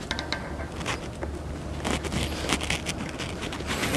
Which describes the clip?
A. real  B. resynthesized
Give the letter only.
A